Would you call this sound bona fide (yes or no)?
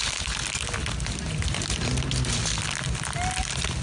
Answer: yes